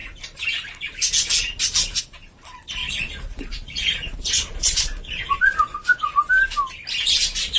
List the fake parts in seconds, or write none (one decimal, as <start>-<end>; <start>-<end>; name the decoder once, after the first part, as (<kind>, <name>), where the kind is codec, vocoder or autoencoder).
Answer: 2.8-6.3 (vocoder, Vocos)